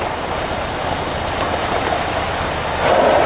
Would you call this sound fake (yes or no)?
no